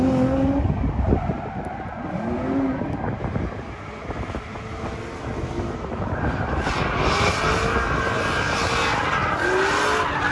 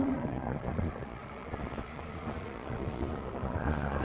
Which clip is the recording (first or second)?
first